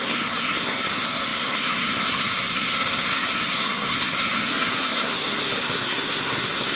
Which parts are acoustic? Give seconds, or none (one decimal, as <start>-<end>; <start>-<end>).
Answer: none